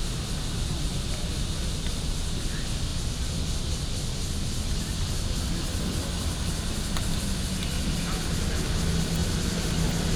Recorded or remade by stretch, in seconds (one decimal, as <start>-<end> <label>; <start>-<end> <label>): 0.0-9.2 recorded; 9.2-9.7 remade; 9.7-10.2 recorded